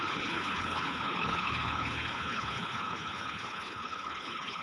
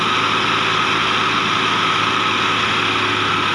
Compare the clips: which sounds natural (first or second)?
second